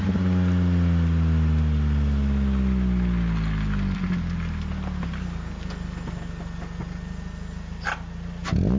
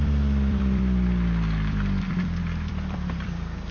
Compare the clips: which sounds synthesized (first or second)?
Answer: second